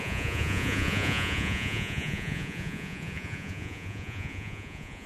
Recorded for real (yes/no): no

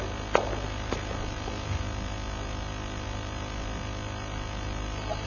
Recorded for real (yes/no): yes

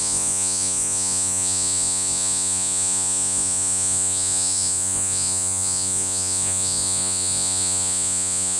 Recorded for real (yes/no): no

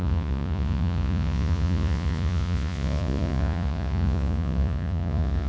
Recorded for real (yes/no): no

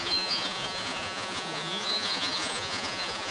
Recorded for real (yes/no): no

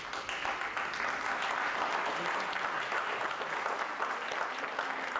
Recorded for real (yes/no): yes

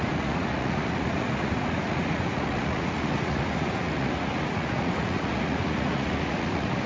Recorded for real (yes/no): no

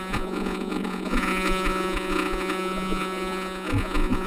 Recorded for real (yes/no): no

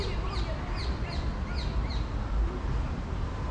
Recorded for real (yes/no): yes